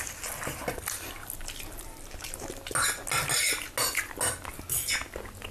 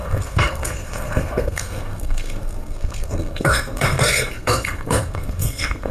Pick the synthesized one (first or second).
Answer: second